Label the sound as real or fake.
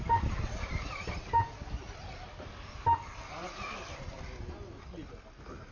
real